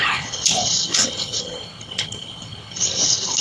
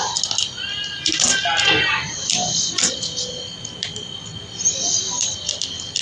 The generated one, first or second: first